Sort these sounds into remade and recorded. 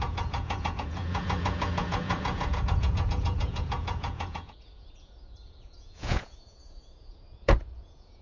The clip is remade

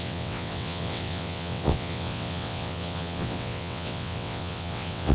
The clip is remade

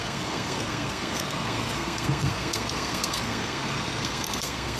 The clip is remade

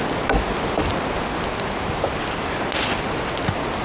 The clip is recorded